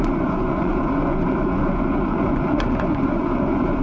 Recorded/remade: remade